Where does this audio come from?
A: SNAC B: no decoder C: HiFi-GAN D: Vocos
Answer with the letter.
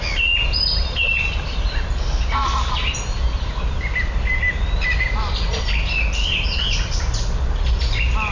B